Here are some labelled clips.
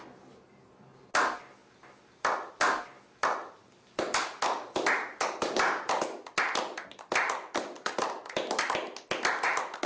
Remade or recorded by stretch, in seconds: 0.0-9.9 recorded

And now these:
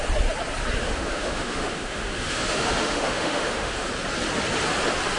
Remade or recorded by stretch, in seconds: 0.0-0.8 recorded; 0.8-3.9 remade; 3.9-5.2 recorded

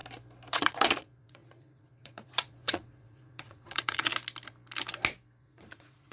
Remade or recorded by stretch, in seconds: 0.0-0.5 recorded; 0.5-4.1 remade; 4.1-5.4 recorded; 5.4-6.1 remade

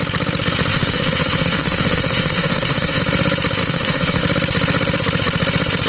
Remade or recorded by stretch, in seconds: 0.0-0.7 recorded; 0.7-3.0 remade; 3.0-3.6 recorded; 3.6-4.2 remade; 4.2-5.9 recorded

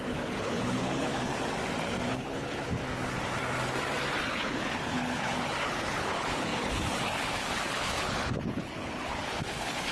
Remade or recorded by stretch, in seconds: 0.0-1.3 remade; 1.3-2.1 recorded; 2.1-2.8 remade; 2.8-4.3 recorded; 4.3-9.9 remade

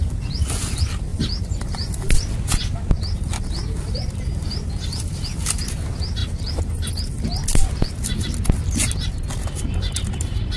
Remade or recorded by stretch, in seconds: 0.0-10.6 recorded

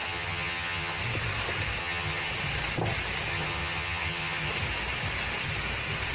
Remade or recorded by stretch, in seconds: 0.0-1.0 remade; 1.0-1.8 recorded; 1.8-2.3 remade; 2.3-3.3 recorded; 3.3-4.5 remade; 4.5-6.1 recorded